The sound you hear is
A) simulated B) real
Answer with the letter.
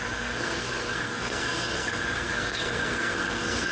A